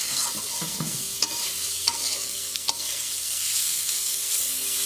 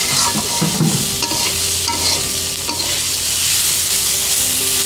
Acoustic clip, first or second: second